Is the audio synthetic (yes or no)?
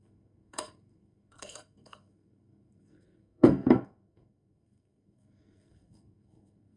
yes